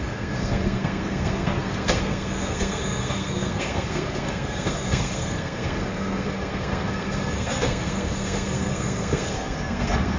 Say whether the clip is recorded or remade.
remade